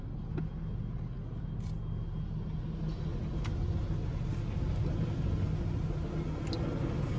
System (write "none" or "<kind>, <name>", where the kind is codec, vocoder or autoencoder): none